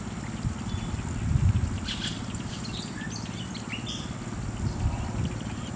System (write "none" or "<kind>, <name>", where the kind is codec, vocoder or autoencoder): none